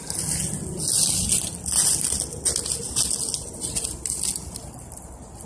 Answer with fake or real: real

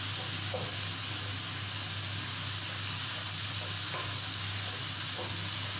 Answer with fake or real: real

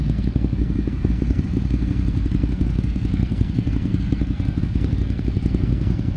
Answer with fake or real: fake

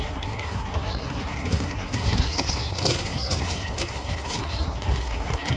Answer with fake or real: fake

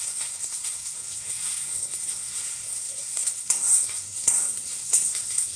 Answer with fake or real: fake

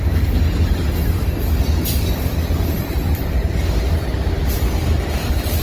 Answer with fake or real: real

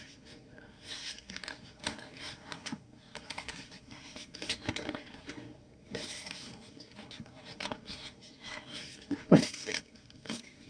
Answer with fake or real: fake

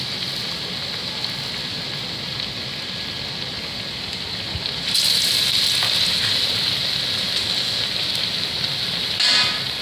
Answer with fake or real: real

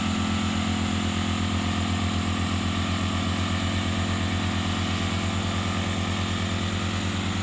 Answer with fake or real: real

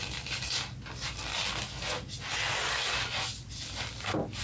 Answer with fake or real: real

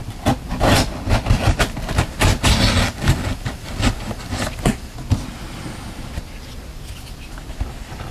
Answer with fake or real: real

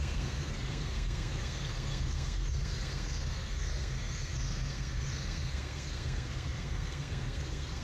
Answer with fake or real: fake